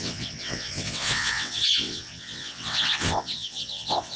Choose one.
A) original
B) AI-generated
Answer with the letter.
B